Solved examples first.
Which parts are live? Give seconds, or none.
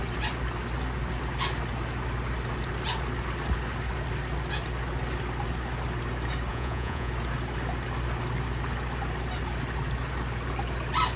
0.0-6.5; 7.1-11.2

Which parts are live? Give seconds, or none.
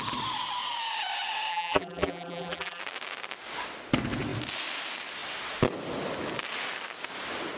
0.0-1.5; 2.8-7.6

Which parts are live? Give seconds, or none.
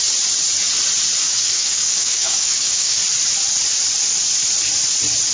0.0-1.2; 3.0-5.3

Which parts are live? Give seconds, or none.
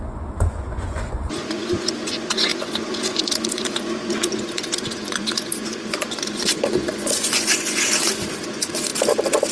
8.9-9.5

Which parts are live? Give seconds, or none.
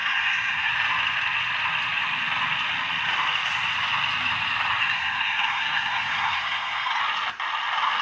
0.7-4.8; 7.0-8.0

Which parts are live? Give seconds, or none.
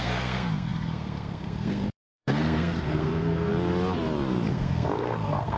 3.5-4.5